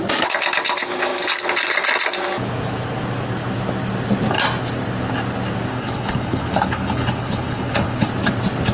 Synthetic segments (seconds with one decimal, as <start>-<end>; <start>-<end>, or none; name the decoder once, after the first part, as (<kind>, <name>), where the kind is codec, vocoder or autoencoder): 5.7-8.1 (codec, HILCodec)

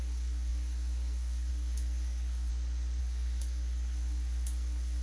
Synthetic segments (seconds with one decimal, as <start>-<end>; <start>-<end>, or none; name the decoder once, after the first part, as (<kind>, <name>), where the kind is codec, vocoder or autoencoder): 0.0-2.5 (codec, SNAC); 3.0-5.0

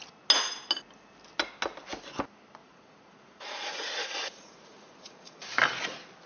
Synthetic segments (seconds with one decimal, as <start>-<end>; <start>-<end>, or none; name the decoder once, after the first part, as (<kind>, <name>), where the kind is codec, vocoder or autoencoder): 2.6-5.4 (vocoder, Vocos)

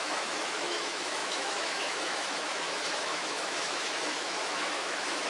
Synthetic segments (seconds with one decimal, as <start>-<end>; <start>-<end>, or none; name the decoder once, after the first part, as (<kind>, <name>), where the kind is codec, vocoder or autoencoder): 0.0-5.3 (autoencoder, DAC-VAE)

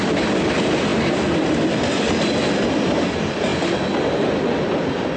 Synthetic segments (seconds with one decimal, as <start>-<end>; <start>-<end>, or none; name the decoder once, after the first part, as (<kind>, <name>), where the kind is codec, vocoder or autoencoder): none

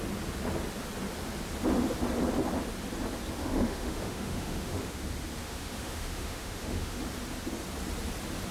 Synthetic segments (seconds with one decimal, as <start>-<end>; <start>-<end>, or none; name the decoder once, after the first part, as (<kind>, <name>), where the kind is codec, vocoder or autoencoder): 3.4-5.0 (autoencoder, DAC-VAE); 5.4-7.0

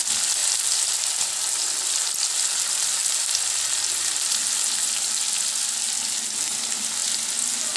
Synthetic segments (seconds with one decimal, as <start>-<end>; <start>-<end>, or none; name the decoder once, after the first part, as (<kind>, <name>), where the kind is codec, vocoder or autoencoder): none

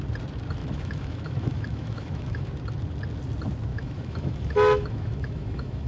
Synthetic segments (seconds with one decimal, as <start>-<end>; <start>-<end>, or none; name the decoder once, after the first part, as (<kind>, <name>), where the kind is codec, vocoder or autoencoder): 0.6-2.5 (autoencoder, DAC-VAE); 3.7-5.9